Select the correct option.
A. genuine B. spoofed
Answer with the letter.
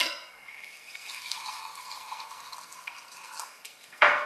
B